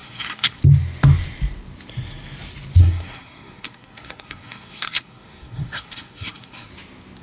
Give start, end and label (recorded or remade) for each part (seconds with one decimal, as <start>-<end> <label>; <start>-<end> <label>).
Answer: 0.0-0.6 remade; 0.6-2.8 recorded; 2.8-6.7 remade; 6.7-7.2 recorded